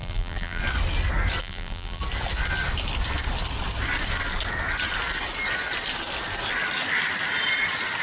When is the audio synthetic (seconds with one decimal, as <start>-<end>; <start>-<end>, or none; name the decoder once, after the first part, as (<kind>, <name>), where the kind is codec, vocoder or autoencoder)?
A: 0.0-0.6 (vocoder, BigVGAN v2); 1.4-2.0

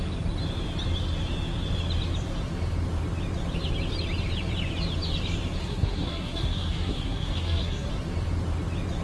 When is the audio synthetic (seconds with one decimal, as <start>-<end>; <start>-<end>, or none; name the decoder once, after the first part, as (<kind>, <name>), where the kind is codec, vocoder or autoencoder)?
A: 5.6-7.9 (codec, SNAC)

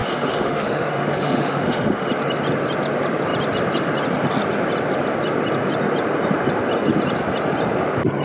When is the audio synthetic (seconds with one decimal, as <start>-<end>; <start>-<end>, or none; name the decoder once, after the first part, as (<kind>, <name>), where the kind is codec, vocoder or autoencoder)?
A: 0.0-2.1 (autoencoder, DAC-VAE)

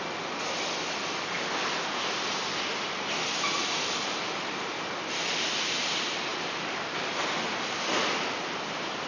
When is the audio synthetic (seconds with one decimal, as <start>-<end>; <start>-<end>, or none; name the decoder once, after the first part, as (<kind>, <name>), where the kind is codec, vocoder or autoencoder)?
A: none